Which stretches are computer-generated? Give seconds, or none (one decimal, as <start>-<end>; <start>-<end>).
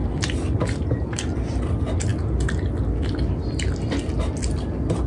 none